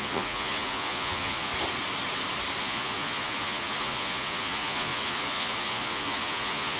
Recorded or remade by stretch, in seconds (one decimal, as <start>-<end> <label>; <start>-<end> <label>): 0.0-1.5 remade; 1.5-2.6 recorded; 2.6-6.8 remade